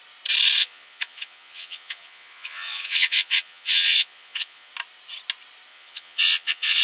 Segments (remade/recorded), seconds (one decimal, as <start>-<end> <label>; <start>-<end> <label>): 0.0-0.6 recorded; 0.6-4.7 remade; 4.7-5.7 recorded; 5.7-6.8 remade